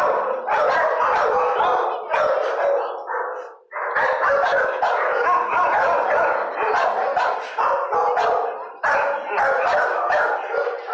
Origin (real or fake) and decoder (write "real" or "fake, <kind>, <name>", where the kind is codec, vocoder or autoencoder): real